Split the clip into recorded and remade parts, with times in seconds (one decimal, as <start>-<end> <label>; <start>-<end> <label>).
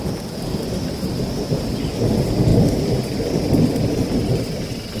0.0-5.0 recorded